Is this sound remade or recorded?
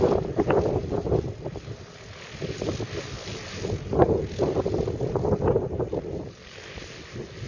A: recorded